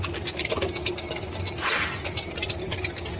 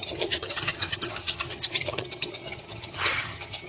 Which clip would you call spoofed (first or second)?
second